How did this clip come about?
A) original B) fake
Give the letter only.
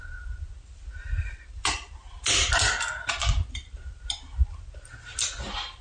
A